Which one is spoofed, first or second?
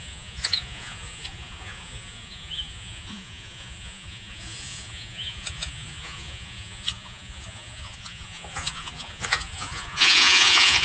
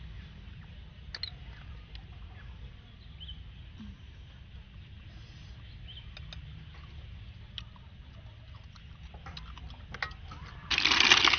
first